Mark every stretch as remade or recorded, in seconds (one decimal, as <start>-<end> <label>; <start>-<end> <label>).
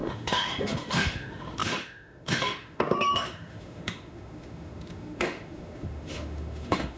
0.0-7.0 remade